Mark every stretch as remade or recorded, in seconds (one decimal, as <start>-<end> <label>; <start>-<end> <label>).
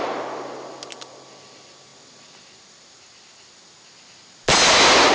0.0-5.1 recorded